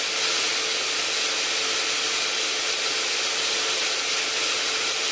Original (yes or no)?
yes